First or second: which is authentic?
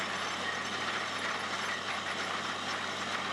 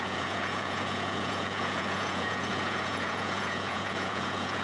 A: first